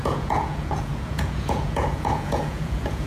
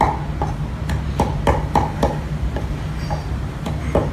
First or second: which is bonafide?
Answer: second